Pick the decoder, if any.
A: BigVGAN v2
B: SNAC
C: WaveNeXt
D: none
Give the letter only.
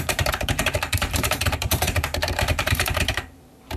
A